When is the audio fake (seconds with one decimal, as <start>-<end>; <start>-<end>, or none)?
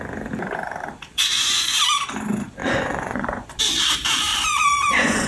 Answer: 1.1-1.8; 2.6-3.6; 4.3-5.3